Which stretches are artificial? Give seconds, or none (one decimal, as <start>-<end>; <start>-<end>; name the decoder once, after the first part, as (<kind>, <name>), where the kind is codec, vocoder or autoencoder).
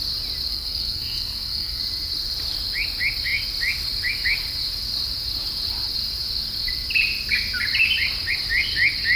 0.5-1.8 (codec, SNAC)